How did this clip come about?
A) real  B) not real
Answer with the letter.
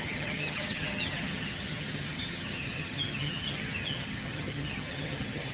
B